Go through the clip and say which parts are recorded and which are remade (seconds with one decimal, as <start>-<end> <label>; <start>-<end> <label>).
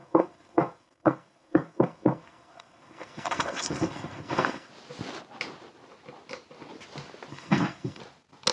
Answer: 0.0-4.7 remade; 4.7-7.3 recorded; 7.3-8.0 remade; 8.0-8.5 recorded